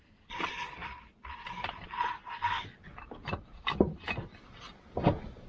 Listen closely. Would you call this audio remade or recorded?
recorded